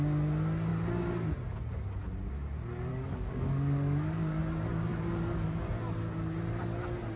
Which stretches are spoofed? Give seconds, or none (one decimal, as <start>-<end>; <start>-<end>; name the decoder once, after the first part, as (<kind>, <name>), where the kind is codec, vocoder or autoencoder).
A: 2.9-4.4 (codec, DAC); 4.9-5.6